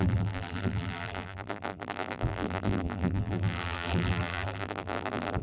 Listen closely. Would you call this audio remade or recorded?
remade